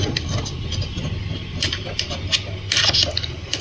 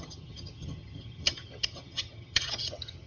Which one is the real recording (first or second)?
first